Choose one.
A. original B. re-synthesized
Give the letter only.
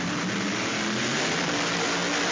A